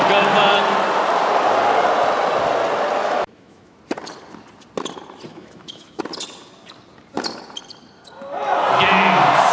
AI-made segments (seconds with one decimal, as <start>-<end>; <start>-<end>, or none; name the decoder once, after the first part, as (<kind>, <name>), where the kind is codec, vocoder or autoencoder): 3.0-3.8 (autoencoder, DAC-VAE); 5.3-6.0